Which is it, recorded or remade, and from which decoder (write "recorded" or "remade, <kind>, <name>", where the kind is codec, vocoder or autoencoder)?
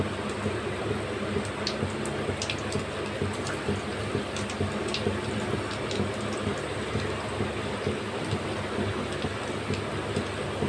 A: recorded